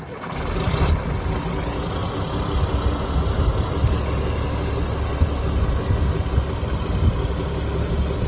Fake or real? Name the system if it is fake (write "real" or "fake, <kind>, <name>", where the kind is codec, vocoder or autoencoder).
real